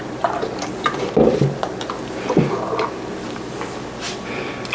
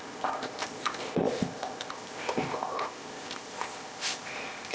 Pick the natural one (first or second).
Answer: first